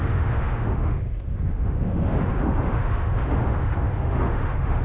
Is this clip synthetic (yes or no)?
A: yes